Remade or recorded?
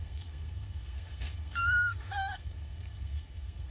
remade